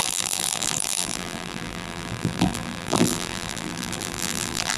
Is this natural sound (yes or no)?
no